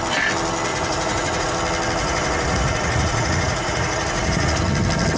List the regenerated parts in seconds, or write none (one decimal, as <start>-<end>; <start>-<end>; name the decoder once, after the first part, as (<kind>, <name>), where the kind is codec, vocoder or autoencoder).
0.7-1.5 (vocoder, Vocos); 2.0-4.6